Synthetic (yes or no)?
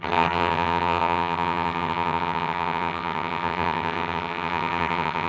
yes